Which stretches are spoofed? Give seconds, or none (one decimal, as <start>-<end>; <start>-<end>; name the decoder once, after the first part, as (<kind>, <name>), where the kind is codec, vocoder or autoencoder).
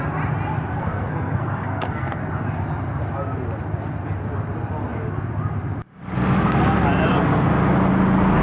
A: 0.7-2.2 (codec, SNAC)